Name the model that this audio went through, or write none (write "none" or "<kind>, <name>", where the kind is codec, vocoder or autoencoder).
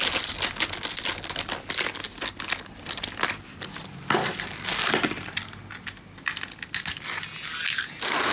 none